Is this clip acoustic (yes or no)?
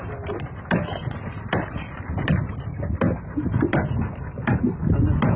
yes